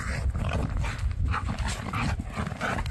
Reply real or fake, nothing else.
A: real